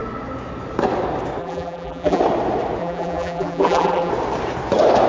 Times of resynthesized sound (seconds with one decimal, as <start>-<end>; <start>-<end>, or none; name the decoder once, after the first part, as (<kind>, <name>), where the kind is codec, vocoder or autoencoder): 1.4-2.2 (vocoder, BigVGAN v2); 2.8-4.1